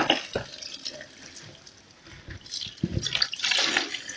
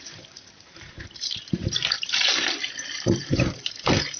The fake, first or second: second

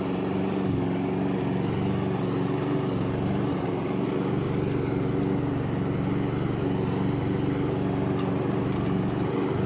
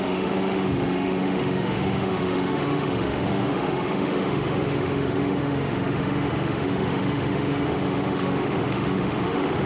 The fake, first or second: second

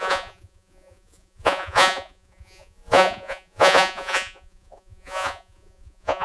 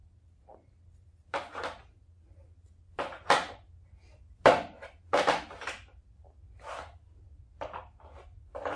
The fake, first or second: first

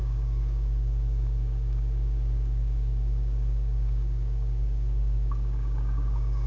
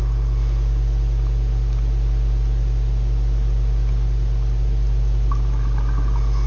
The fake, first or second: first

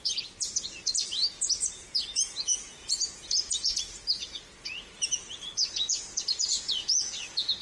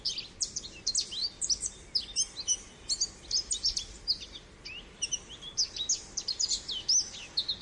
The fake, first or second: first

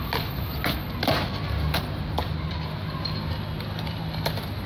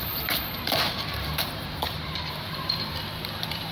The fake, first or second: second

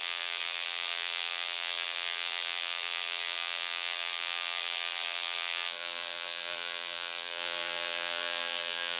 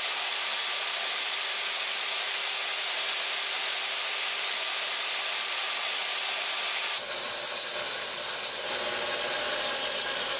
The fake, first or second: first